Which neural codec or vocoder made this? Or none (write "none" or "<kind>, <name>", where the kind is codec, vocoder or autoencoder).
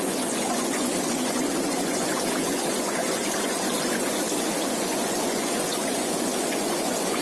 vocoder, Vocos